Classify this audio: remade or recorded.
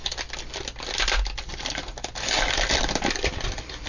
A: recorded